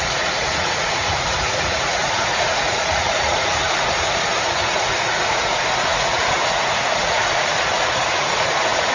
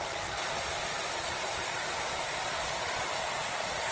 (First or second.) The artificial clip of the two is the first